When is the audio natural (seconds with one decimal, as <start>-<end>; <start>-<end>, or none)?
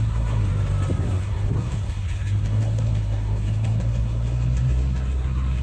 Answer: 0.5-1.0